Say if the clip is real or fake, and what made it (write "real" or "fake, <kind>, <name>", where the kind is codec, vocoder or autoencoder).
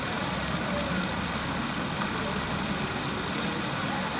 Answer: real